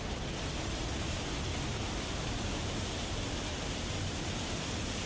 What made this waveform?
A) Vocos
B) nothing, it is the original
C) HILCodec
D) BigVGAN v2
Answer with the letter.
D